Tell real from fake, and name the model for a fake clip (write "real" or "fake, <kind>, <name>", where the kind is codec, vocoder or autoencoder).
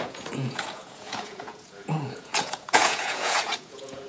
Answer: fake, vocoder, Vocos